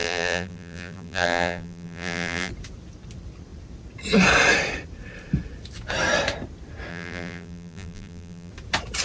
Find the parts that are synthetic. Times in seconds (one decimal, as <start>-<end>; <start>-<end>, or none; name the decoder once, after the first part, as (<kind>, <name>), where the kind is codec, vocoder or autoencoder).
0.0-2.5 (vocoder, BigVGAN v2); 6.9-8.5